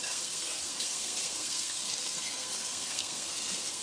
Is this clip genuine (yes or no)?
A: no